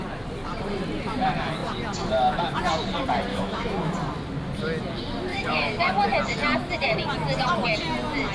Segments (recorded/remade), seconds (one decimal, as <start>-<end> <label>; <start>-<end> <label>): 0.0-3.3 recorded; 3.3-3.9 remade; 3.9-5.3 recorded; 5.3-6.1 remade; 6.1-8.3 recorded